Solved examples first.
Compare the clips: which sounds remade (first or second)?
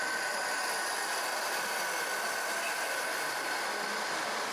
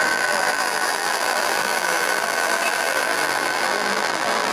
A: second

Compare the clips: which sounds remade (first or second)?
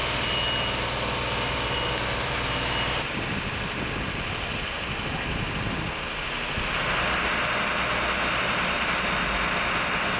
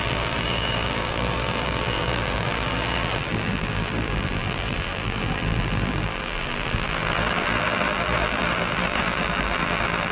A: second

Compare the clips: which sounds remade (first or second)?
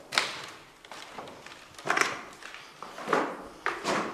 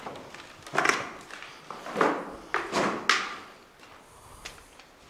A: first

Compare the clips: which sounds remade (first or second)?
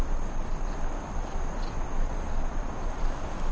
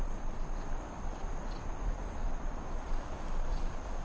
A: second